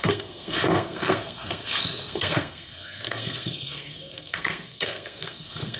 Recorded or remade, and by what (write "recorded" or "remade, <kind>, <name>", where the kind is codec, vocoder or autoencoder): remade, codec, SNAC